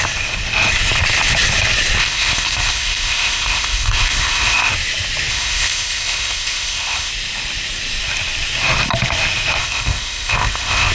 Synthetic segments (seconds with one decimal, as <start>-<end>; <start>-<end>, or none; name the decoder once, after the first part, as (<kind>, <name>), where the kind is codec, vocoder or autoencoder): 2.0-4.7 (codec, ZipCodec); 5.3-7.1; 9.6-10.9